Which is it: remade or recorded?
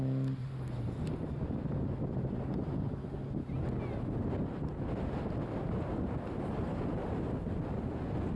recorded